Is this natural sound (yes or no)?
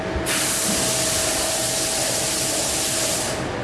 yes